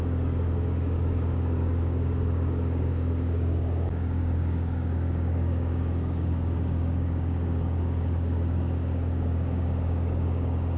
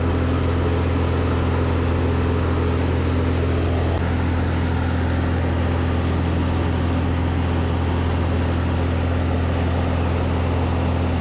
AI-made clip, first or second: first